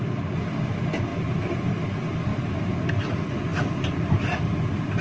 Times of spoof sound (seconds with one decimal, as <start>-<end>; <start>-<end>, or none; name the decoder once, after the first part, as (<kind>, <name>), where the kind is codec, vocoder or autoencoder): 1.1-1.6 (vocoder, BigVGAN v2); 3.5-4.2